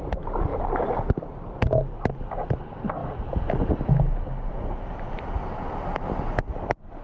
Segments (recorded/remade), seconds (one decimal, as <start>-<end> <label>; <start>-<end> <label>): 0.0-7.0 recorded